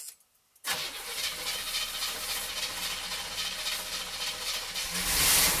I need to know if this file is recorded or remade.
recorded